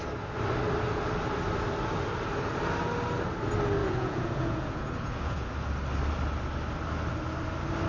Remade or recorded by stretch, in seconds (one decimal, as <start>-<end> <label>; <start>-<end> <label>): 0.0-3.8 recorded; 3.8-5.5 remade; 5.5-7.9 recorded

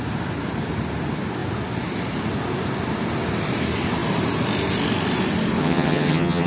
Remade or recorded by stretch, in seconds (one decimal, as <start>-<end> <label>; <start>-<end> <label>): 0.0-5.6 recorded; 5.6-6.5 remade

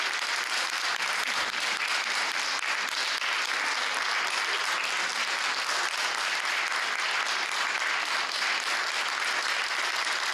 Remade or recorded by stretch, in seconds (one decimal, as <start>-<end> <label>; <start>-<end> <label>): 0.0-10.3 recorded

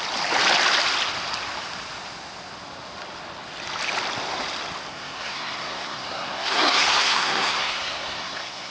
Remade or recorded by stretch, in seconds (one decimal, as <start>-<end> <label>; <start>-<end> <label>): 0.0-4.9 recorded; 4.9-8.7 remade

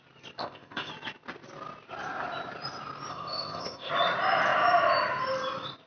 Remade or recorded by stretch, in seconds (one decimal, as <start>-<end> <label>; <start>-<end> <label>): 0.0-0.4 recorded; 0.4-0.9 remade; 0.9-3.1 recorded; 3.1-3.9 remade; 3.9-5.9 recorded

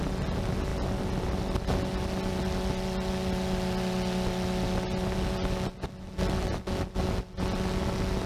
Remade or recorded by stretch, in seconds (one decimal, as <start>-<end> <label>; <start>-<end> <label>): 0.0-8.3 recorded

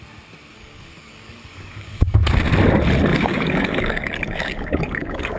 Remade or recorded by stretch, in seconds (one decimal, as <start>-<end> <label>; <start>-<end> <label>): 0.0-0.5 recorded; 0.5-2.2 remade; 2.2-3.1 recorded; 3.1-5.4 remade

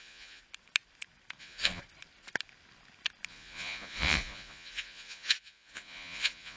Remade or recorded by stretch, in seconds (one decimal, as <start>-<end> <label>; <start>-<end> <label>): 0.0-0.4 remade; 0.4-1.4 recorded; 1.4-1.8 remade; 1.8-3.3 recorded; 3.3-6.6 remade